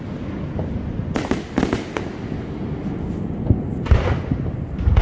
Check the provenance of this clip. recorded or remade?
recorded